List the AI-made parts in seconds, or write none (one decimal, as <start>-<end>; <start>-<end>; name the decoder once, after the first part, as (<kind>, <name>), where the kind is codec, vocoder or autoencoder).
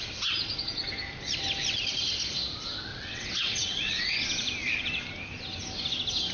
2.9-4.2 (vocoder, WaveNeXt)